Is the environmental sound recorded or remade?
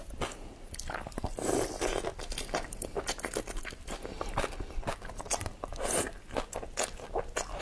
recorded